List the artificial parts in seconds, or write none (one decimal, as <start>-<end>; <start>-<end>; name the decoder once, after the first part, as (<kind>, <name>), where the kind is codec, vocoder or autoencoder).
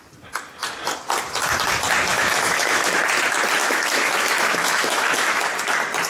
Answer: 2.1-3.0 (autoencoder, DAC-VAE); 3.6-5.4